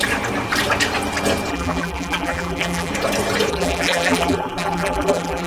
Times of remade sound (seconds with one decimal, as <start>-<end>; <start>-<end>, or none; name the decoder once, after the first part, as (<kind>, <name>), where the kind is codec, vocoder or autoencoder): 1.5-2.9 (vocoder, BigVGAN v2); 3.5-5.5